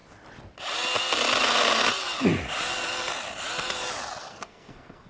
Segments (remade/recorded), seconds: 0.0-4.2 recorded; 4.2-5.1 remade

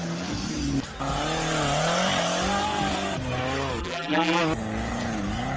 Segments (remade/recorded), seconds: 0.0-3.8 recorded; 3.8-4.4 remade; 4.4-5.6 recorded

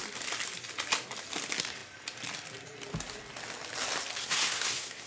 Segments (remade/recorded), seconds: 0.0-4.2 recorded; 4.2-5.1 remade

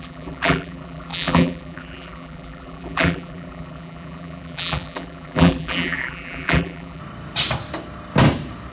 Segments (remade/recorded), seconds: 0.0-7.0 remade; 7.0-8.7 recorded

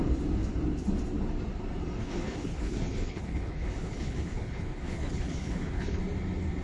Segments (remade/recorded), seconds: 0.0-2.0 recorded; 2.0-6.0 remade; 6.0-6.6 recorded

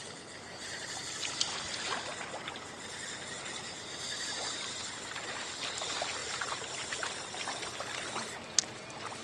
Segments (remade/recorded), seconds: 0.0-0.5 recorded; 0.5-1.0 remade; 1.0-6.2 recorded; 6.2-6.7 remade; 6.7-9.2 recorded

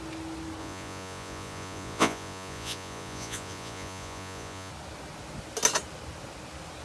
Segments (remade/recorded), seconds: 0.0-0.6 recorded; 0.6-4.7 remade; 4.7-6.8 recorded

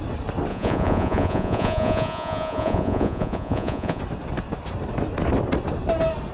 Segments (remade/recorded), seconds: 0.0-0.5 recorded; 0.5-4.0 remade; 4.0-6.3 recorded